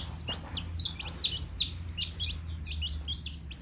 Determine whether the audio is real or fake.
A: real